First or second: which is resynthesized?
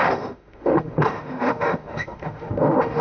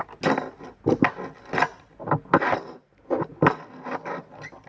first